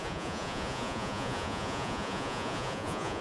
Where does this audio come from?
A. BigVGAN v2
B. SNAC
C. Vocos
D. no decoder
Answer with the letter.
C